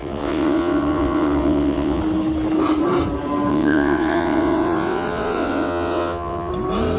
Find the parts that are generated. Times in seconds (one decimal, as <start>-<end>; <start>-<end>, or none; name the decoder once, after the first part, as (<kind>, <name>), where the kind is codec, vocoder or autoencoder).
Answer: 0.0-2.0 (vocoder, WaveNeXt); 3.5-6.5

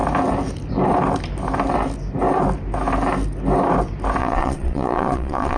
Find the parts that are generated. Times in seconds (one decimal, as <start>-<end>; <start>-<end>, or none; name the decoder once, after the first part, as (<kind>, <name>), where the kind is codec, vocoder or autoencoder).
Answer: 4.2-5.6 (vocoder, WaveNeXt)

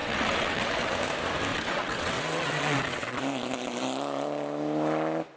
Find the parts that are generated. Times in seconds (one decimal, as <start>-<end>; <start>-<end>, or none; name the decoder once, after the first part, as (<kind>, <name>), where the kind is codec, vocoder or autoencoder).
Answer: 0.0-0.9 (vocoder, WaveNeXt); 1.5-3.2